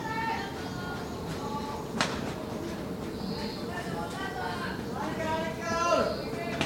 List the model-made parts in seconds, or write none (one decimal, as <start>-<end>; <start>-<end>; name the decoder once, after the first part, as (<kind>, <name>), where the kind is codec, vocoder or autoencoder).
none